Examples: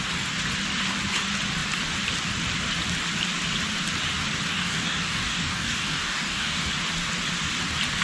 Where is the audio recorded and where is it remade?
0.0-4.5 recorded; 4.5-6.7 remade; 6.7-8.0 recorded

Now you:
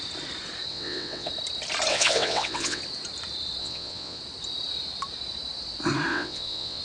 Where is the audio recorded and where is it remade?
0.0-0.7 recorded; 0.7-1.3 remade; 1.3-1.9 recorded; 1.9-2.8 remade; 2.8-3.6 recorded; 3.6-4.2 remade; 4.2-6.1 recorded; 6.1-6.8 remade

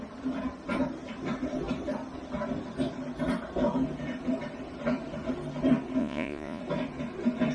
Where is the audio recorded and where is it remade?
0.0-6.0 recorded; 6.0-6.6 remade; 6.6-7.5 recorded

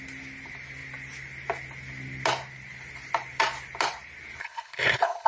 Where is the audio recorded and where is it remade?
0.0-4.4 recorded; 4.4-5.3 remade

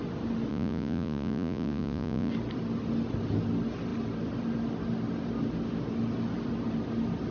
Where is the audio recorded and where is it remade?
0.0-0.5 recorded; 0.5-2.3 remade; 2.3-7.3 recorded

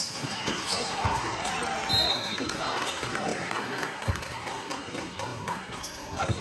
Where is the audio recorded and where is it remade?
0.0-1.5 remade; 1.5-2.1 recorded; 2.1-6.4 remade